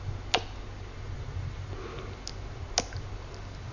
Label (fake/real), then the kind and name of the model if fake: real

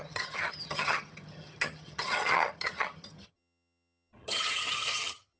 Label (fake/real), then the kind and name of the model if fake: fake, vocoder, HiFi-GAN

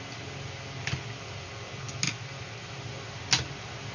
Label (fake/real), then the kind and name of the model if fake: real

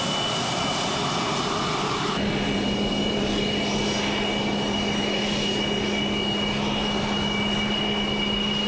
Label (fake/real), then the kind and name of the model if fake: real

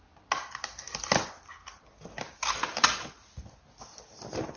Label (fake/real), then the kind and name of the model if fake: real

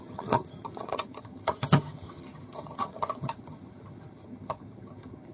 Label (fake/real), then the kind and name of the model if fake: fake, vocoder, HiFi-GAN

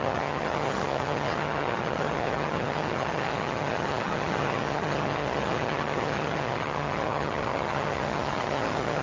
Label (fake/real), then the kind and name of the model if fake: fake, vocoder, HiFi-GAN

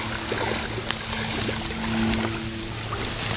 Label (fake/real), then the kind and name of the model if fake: real